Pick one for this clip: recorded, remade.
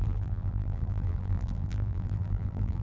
remade